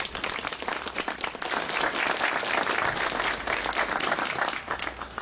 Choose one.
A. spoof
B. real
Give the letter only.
A